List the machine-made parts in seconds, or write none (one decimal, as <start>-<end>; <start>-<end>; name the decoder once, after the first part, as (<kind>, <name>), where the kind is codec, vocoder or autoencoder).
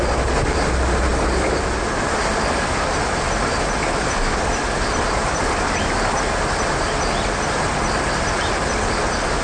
none